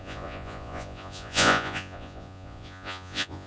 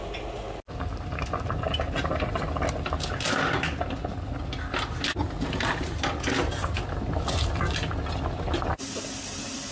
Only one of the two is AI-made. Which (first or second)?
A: first